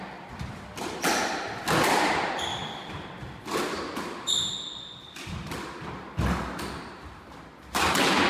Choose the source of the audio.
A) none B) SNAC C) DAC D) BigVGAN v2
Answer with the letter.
A